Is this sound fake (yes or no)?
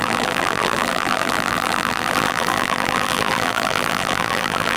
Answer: yes